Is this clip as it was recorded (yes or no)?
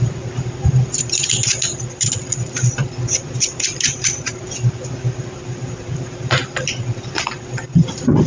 yes